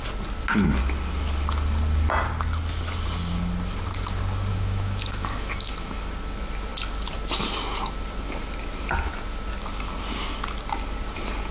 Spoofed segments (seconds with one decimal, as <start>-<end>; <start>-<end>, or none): 4.5-6.0